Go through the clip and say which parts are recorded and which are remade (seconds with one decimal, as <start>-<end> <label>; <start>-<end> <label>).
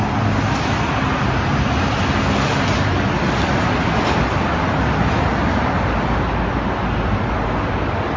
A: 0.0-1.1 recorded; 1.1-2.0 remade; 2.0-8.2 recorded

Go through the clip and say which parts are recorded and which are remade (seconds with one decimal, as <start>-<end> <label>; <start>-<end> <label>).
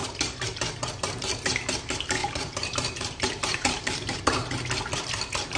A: 0.0-2.2 recorded; 2.2-4.2 remade; 4.2-5.6 recorded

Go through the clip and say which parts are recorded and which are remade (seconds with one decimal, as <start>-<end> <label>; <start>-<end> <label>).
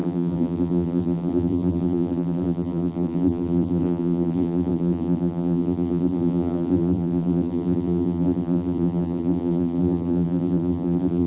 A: 0.0-11.3 remade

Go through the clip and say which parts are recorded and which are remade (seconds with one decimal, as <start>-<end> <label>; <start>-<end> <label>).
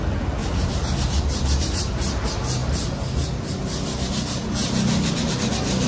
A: 0.0-0.4 recorded; 0.4-1.2 remade; 1.2-4.6 recorded; 4.6-5.5 remade; 5.5-5.9 recorded